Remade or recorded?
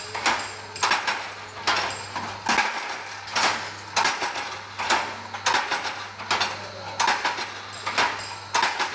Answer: recorded